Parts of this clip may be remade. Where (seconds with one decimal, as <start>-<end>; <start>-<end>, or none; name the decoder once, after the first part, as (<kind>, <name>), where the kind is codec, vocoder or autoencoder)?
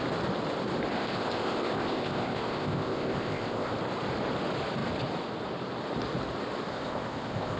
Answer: 0.9-3.7 (codec, ZipCodec); 6.7-7.6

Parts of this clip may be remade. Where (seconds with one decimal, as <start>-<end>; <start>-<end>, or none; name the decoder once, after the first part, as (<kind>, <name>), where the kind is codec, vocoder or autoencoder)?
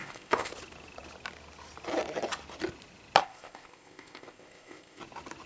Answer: 0.0-0.5 (codec, ZipCodec); 3.2-5.0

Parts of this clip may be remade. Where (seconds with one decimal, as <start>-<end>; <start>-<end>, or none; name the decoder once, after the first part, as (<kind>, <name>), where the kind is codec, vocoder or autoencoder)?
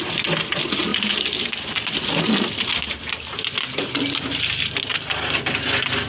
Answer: none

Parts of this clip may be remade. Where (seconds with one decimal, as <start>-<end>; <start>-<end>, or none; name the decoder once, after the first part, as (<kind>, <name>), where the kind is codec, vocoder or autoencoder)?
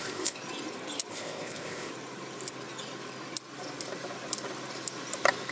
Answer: 0.0-0.4 (codec, ZipCodec); 1.1-1.9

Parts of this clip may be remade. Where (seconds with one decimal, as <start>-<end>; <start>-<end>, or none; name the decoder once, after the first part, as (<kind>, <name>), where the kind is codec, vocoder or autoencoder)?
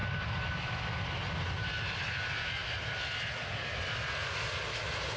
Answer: none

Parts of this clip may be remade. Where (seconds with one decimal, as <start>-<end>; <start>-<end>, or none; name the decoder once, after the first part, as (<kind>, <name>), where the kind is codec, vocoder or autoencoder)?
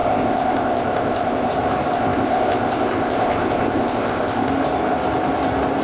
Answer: 0.0-1.5 (codec, ZipCodec); 1.9-4.5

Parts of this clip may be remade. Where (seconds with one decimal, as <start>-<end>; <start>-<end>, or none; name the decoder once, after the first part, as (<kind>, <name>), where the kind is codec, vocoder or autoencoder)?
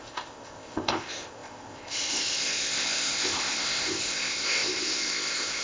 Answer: 0.0-5.6 (codec, ZipCodec)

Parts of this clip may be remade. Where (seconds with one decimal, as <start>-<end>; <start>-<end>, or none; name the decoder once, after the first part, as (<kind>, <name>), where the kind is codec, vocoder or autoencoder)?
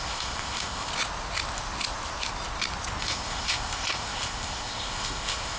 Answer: 0.0-0.9 (codec, ZipCodec); 3.0-5.6